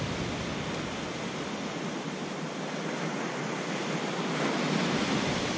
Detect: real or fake real